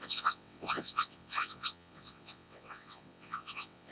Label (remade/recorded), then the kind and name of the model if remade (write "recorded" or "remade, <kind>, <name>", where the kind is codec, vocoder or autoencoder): remade, vocoder, WaveNeXt